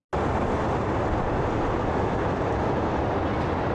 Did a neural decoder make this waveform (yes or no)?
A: no